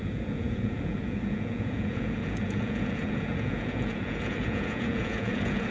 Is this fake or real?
fake